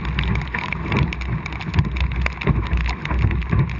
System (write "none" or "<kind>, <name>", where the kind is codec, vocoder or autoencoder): none